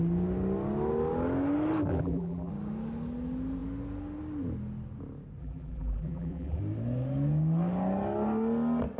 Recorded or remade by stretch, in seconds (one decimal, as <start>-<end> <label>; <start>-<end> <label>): 0.0-1.9 recorded; 1.9-2.5 remade; 2.5-5.4 recorded; 5.4-6.6 remade; 6.6-9.0 recorded